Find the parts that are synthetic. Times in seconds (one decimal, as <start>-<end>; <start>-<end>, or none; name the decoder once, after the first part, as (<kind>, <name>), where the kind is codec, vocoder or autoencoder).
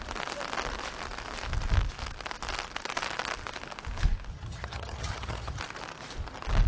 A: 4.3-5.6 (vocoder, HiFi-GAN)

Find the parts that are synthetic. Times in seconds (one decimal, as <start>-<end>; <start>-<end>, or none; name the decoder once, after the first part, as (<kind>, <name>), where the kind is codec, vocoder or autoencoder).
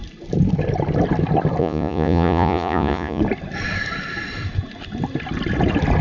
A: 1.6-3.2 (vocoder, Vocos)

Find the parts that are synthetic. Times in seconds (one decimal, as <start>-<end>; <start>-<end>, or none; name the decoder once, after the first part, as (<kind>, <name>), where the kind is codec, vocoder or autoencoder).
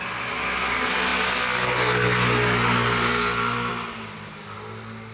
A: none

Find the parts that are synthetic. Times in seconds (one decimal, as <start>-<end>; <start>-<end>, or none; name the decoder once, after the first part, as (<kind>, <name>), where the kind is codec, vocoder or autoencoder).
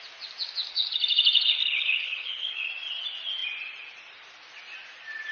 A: 0.7-2.7 (codec, HILCodec)